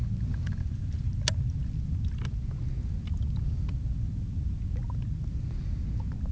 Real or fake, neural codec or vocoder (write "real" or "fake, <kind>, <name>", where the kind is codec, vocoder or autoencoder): real